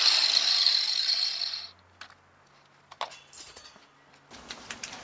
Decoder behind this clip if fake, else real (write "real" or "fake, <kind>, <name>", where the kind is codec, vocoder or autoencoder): real